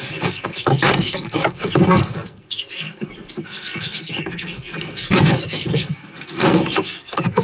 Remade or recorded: remade